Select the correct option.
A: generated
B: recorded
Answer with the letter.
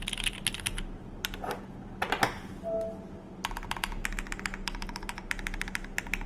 B